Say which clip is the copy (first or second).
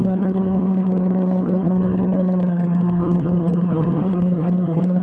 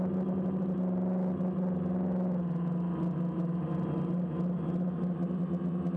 first